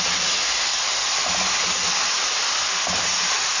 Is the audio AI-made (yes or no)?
no